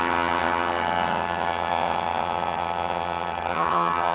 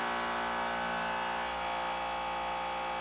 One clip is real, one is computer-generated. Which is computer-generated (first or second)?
first